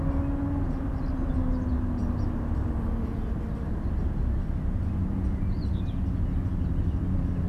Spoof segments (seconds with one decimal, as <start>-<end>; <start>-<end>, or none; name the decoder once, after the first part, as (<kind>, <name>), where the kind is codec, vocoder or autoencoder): none